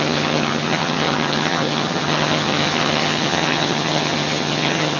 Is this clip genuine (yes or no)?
no